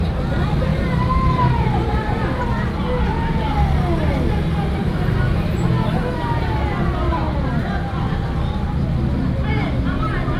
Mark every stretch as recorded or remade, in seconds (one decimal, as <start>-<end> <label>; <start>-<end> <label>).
0.0-0.7 recorded; 0.7-2.7 remade; 2.7-4.8 recorded; 4.8-5.5 remade; 5.5-10.4 recorded